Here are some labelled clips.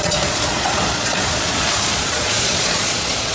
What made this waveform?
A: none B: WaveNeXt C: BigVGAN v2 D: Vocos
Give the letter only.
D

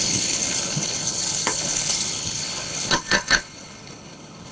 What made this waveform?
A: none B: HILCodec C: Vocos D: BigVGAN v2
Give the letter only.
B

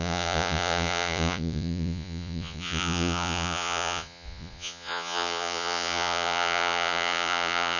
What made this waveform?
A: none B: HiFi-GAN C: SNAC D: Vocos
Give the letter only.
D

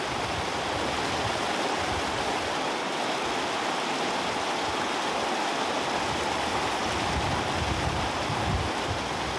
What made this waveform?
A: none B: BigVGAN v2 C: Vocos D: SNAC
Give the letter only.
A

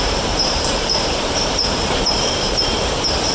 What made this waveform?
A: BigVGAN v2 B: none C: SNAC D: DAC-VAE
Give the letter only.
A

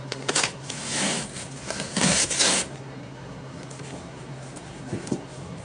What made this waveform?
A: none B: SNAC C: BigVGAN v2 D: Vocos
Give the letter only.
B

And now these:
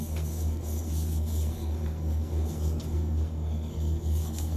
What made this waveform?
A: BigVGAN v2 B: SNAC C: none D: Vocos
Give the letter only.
B